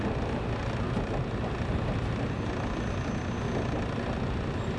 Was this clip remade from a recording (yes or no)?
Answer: no